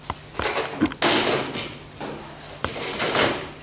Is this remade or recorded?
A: recorded